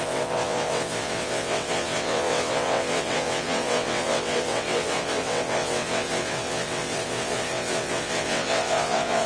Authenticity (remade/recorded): remade